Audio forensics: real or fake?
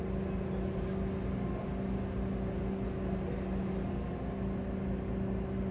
real